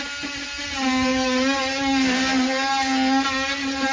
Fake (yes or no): no